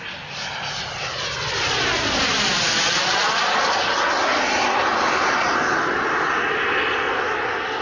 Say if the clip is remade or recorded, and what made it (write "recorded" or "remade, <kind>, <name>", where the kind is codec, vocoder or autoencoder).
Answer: recorded